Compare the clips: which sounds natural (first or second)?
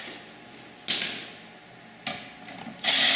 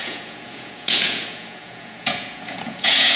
first